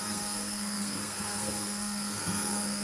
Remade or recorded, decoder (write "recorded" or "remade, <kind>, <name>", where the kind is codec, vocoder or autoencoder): remade, codec, SNAC